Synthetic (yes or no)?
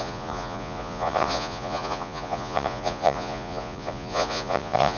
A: yes